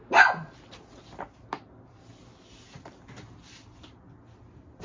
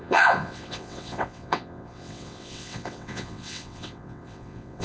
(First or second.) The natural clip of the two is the first